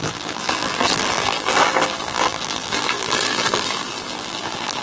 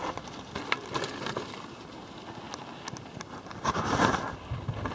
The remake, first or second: first